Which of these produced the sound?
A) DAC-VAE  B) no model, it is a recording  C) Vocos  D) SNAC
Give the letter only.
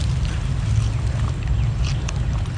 B